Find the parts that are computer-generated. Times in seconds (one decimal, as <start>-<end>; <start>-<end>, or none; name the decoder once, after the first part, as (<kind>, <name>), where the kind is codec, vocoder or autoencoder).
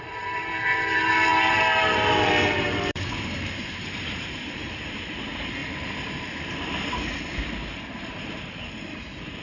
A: 0.0-5.6 (vocoder, BigVGAN v2); 8.1-9.4